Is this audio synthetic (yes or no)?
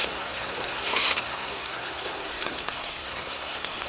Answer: yes